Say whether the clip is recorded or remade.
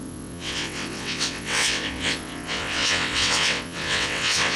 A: remade